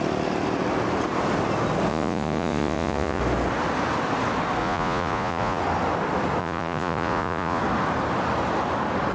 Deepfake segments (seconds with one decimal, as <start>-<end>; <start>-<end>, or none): 1.9-3.2; 4.6-5.6; 6.4-7.6